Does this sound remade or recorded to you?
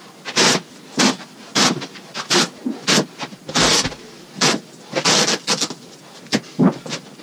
recorded